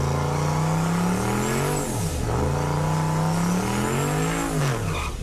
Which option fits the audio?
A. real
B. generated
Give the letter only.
A